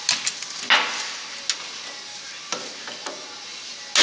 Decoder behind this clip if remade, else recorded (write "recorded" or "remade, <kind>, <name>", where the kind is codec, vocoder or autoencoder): recorded